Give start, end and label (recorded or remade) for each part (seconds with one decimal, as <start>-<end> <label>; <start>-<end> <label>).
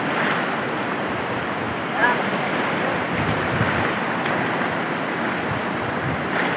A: 0.0-6.6 recorded